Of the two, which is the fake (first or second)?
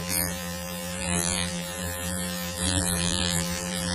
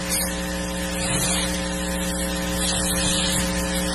first